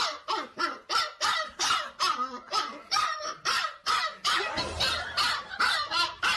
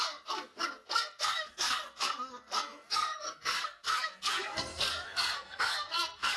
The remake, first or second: second